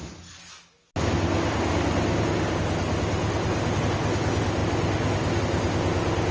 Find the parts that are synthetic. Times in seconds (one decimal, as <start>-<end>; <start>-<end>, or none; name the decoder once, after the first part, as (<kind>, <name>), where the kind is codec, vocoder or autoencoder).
none